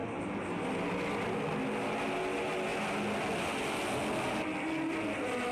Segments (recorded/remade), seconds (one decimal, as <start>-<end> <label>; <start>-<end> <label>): 0.0-5.5 recorded